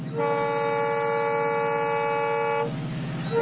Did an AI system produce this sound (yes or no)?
no